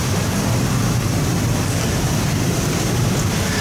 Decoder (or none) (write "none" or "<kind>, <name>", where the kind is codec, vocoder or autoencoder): none